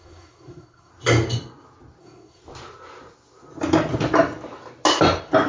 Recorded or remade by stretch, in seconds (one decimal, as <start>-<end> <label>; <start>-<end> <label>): 0.0-0.9 remade; 0.9-2.0 recorded; 2.0-2.4 remade; 2.4-5.5 recorded

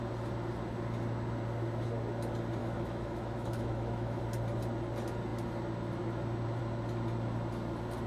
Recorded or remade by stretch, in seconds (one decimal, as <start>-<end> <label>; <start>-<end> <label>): 0.0-2.6 recorded; 2.6-4.2 remade; 4.2-8.1 recorded